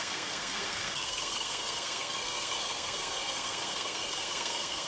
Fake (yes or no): yes